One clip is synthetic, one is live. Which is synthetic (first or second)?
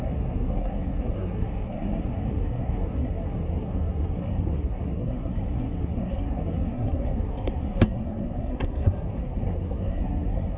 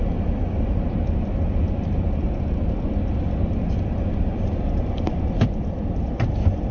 first